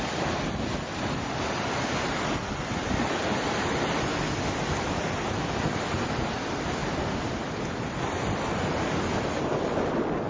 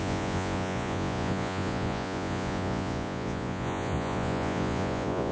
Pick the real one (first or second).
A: first